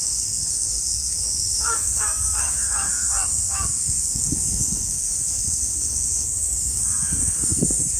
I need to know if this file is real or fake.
fake